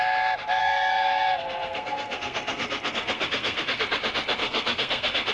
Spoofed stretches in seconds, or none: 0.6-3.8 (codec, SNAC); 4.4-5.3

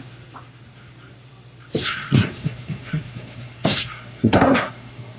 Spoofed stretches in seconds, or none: 1.8-5.2 (codec, SNAC)

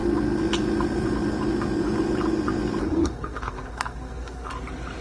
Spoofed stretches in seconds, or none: 2.8-4.5 (codec, SNAC)

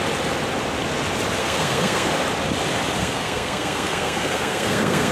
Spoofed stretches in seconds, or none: 1.4-2.1 (codec, SNAC); 3.0-5.1

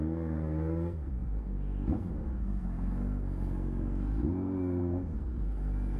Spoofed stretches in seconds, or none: 0.0-6.0 (codec, SNAC)

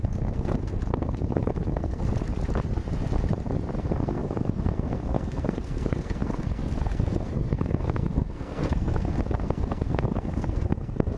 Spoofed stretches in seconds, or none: 0.0-2.1 (codec, SNAC); 3.8-11.2